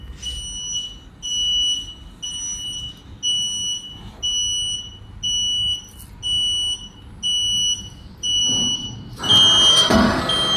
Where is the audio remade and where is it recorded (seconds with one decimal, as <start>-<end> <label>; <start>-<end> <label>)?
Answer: 0.0-9.7 recorded; 9.7-10.2 remade; 10.2-10.6 recorded